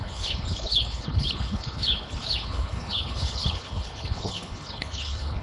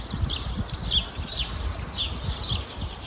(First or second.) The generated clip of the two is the first